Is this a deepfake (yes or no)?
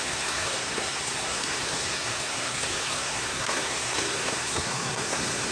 yes